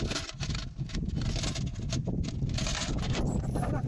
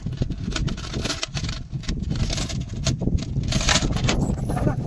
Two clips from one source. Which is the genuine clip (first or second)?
first